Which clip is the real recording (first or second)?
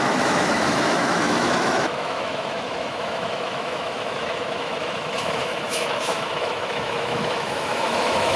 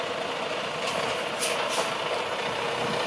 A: second